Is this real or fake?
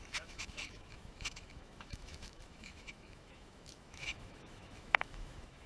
fake